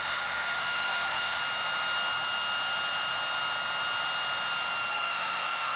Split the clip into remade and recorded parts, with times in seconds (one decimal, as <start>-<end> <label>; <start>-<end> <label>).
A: 0.0-1.4 remade; 1.4-4.9 recorded; 4.9-5.8 remade